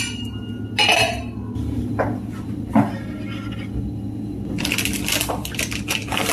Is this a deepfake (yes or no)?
no